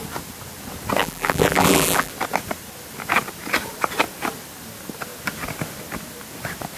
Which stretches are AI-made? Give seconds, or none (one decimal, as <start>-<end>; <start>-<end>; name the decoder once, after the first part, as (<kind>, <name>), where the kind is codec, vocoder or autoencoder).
1.0-2.1 (vocoder, BigVGAN v2)